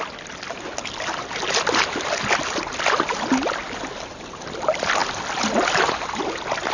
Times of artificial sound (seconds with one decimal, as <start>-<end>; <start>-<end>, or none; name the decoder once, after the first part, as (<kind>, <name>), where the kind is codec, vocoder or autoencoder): none